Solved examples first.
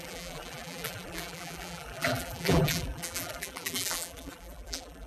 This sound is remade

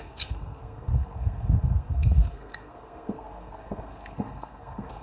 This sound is remade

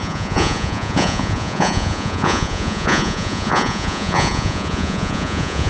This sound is remade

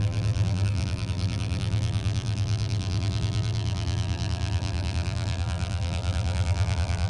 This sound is remade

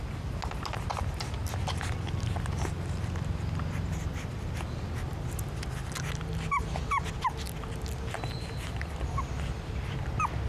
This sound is recorded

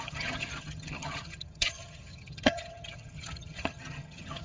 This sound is remade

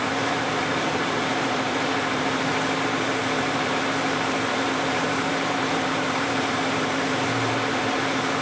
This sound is remade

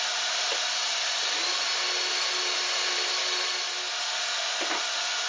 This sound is recorded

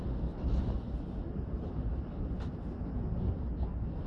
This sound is recorded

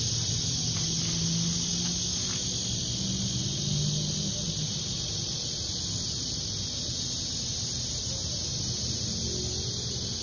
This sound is recorded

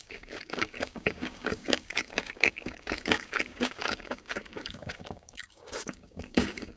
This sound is remade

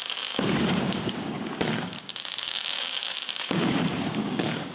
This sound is remade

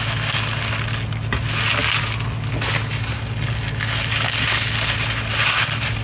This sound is recorded